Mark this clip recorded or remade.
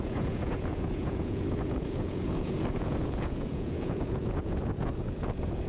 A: remade